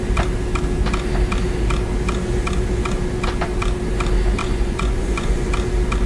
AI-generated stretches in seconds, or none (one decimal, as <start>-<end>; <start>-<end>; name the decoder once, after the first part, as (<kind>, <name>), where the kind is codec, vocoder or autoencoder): 4.4-5.5 (vocoder, Vocos)